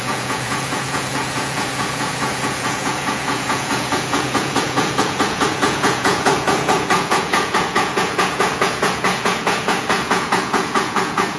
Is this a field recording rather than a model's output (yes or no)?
no